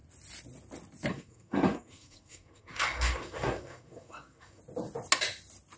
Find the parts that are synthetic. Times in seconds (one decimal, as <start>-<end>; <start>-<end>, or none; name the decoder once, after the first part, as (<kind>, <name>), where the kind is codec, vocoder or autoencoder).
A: 1.1-4.6 (codec, SNAC)